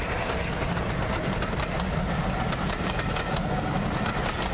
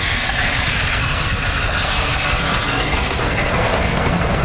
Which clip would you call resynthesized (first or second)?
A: second